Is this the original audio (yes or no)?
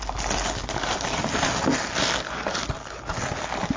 yes